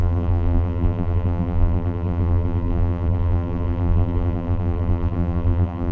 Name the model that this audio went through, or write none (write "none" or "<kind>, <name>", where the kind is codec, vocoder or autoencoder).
vocoder, BigVGAN v2